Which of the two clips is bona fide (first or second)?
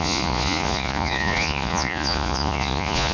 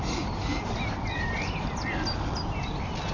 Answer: second